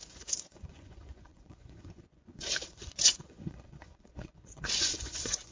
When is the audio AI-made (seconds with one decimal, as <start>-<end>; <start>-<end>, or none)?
0.0-5.5